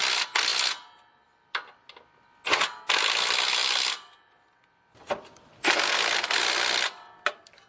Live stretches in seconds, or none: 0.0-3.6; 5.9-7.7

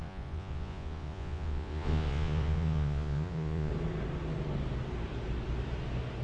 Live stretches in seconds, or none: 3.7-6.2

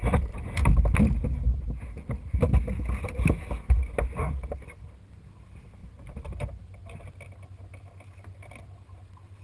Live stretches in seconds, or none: 0.0-5.8; 6.6-9.4